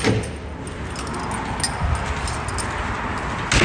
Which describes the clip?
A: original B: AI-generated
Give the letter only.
A